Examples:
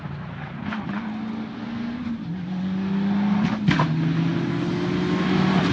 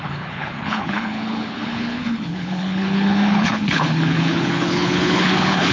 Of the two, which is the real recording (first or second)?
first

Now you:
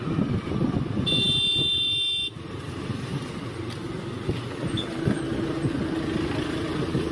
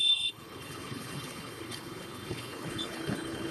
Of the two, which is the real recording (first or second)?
first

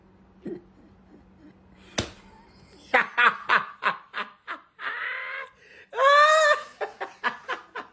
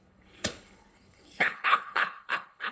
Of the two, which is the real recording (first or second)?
first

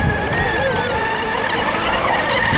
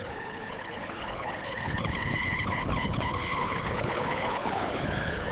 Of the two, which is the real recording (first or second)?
first